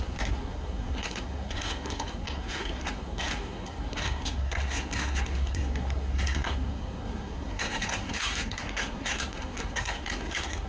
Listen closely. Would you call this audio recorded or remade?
remade